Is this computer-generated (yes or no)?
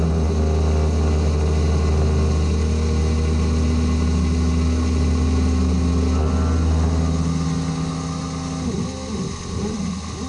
no